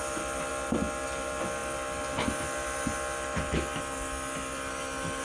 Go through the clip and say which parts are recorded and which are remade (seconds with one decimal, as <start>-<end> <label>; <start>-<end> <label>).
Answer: 0.0-5.2 recorded